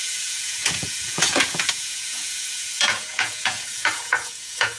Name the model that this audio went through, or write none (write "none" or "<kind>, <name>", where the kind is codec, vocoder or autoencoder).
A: vocoder, Vocos